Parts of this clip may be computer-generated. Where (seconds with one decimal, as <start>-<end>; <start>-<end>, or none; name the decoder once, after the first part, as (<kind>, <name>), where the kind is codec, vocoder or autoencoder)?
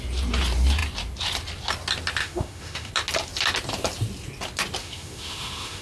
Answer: 2.2-2.9 (autoencoder, DAC-VAE); 4.8-5.8